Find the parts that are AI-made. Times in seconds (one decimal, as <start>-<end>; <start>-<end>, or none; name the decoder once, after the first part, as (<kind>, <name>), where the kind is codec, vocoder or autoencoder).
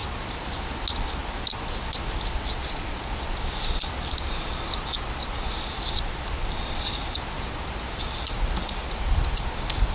none